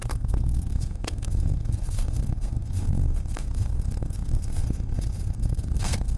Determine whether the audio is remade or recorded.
remade